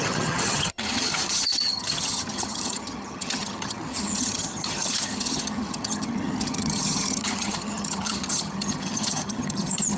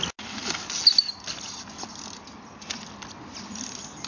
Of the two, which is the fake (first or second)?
first